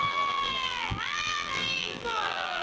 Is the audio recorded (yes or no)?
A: no